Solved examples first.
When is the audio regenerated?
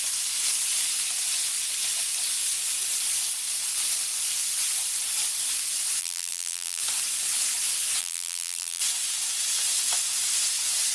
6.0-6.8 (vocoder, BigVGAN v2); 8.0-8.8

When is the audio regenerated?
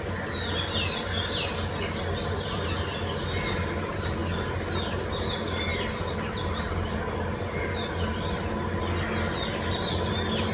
none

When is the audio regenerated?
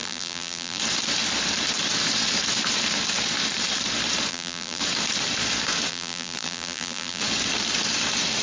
0.0-0.8 (vocoder, BigVGAN v2); 4.3-4.8; 5.9-7.2